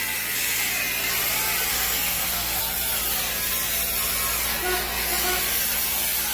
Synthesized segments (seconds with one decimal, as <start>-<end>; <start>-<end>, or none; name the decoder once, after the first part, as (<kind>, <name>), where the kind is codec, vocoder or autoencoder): 1.7-2.6 (codec, SNAC)